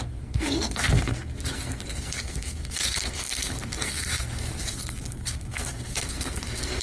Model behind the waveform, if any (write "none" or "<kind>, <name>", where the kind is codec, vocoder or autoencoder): codec, SNAC